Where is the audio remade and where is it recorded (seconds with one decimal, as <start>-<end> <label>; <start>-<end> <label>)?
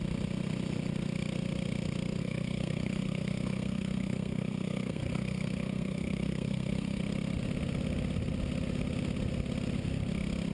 0.0-2.2 recorded; 2.2-7.0 remade; 7.0-10.5 recorded